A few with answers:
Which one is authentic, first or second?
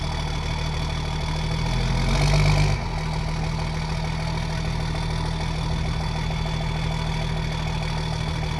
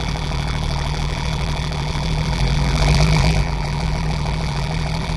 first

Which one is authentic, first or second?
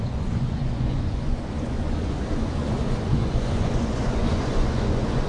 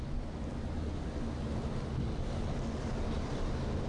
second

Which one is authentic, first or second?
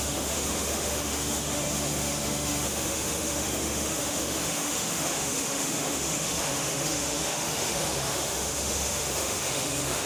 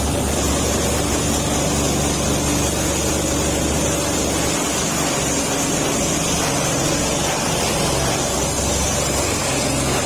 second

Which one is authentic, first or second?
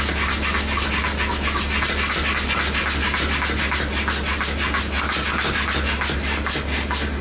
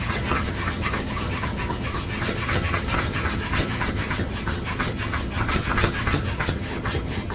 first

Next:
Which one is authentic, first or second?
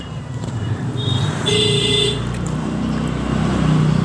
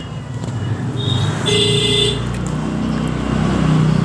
second